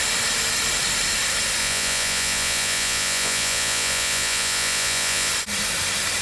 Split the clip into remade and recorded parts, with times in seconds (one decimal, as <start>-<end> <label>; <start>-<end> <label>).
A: 0.0-1.6 recorded; 1.6-5.3 remade; 5.3-6.2 recorded